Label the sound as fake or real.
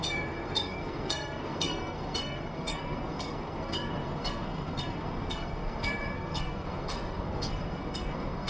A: fake